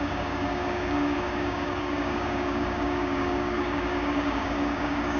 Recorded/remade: remade